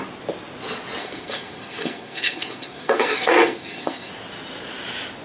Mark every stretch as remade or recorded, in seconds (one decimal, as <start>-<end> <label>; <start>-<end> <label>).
0.0-1.0 recorded; 1.0-4.1 remade; 4.1-5.2 recorded